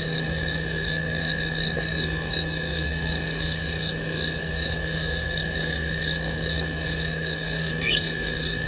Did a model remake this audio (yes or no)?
yes